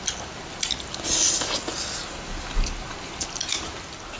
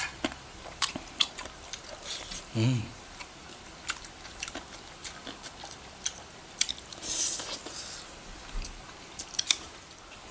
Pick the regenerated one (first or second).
second